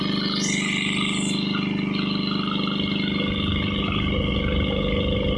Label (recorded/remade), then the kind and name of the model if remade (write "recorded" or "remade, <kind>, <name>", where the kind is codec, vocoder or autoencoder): recorded